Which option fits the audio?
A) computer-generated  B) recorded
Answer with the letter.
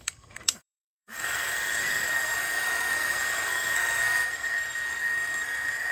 A